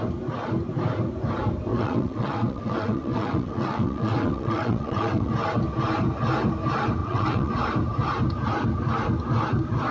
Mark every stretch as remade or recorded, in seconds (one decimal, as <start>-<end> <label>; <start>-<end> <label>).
0.0-1.7 recorded; 1.7-5.3 remade; 5.3-7.0 recorded; 7.0-7.5 remade; 7.5-9.9 recorded